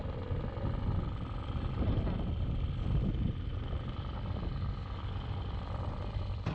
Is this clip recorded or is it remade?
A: recorded